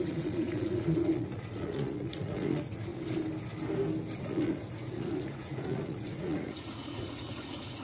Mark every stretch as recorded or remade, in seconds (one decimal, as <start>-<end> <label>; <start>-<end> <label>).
0.0-2.9 remade; 2.9-4.2 recorded; 4.2-7.8 remade